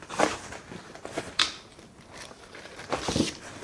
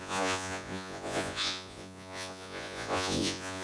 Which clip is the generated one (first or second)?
second